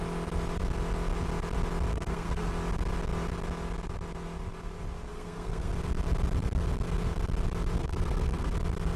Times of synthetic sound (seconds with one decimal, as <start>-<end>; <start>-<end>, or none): 1.9-2.5; 5.1-5.7; 7.8-8.6